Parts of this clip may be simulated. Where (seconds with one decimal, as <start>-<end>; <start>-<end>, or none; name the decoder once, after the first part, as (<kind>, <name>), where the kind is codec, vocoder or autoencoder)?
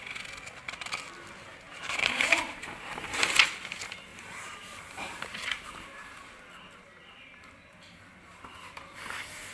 1.5-3.1 (vocoder, BigVGAN v2); 4.1-5.7